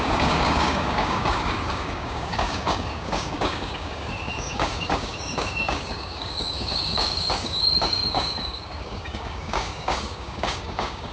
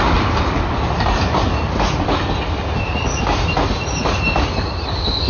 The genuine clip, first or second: second